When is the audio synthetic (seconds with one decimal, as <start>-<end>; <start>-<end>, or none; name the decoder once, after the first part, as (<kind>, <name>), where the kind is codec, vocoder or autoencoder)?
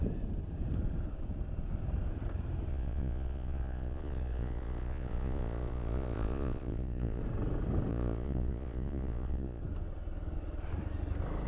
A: 2.7-7.2 (vocoder, Vocos); 7.9-9.6